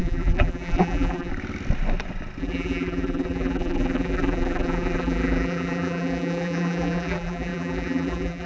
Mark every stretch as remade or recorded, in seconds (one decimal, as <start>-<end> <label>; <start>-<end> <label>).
0.0-1.3 remade; 1.3-2.4 recorded; 2.4-8.5 remade